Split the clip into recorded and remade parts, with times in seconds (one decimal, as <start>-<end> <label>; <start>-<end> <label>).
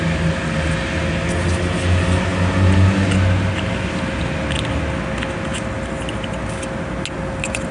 0.0-7.7 recorded